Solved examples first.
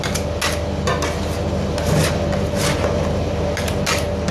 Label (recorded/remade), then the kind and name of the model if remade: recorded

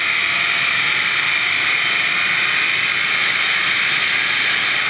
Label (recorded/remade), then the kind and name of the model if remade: recorded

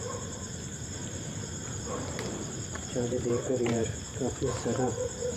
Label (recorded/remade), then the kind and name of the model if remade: remade, vocoder, BigVGAN v2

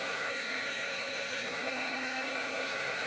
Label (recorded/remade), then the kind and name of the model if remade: remade, codec, SNAC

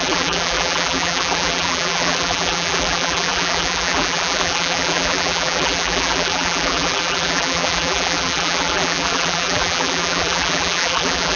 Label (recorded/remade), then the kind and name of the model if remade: remade, vocoder, BigVGAN v2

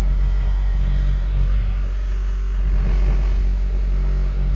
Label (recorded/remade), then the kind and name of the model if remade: remade, codec, SNAC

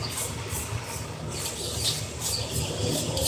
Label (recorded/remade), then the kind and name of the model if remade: recorded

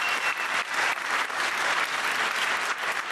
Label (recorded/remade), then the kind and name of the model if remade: recorded